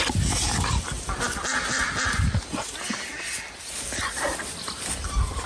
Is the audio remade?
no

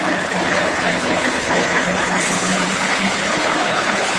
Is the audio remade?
yes